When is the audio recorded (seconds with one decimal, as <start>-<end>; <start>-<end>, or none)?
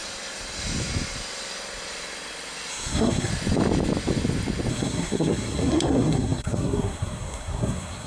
0.0-2.7; 3.3-4.7